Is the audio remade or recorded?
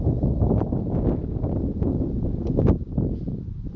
recorded